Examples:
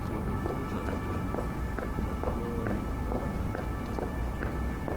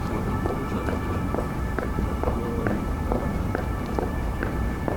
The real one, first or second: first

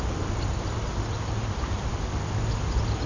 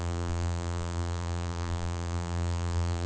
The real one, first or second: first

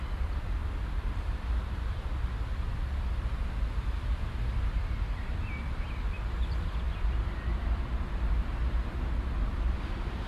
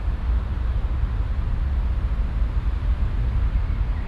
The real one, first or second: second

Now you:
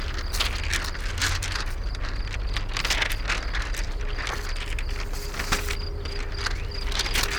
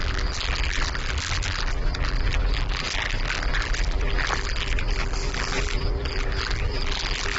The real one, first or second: first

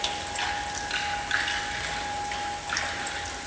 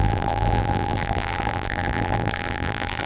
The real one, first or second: first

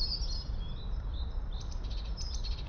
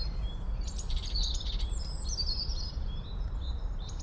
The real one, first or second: first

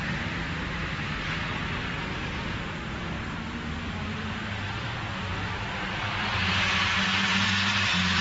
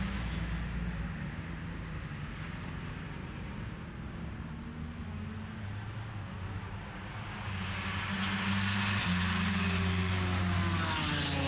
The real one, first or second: second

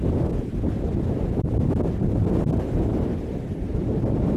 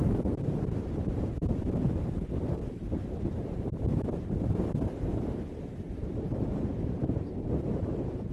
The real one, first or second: first